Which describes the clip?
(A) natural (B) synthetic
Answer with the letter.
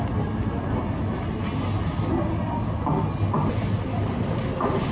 A